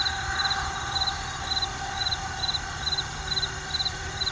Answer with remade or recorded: recorded